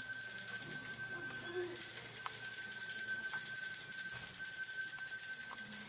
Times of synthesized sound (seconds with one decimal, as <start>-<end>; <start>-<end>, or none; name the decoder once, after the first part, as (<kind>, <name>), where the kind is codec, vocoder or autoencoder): 0.8-4.3 (vocoder, BigVGAN v2)